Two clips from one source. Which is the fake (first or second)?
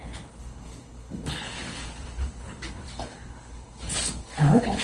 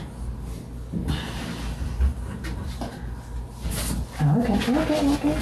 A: first